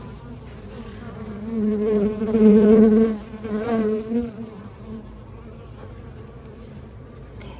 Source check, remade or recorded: remade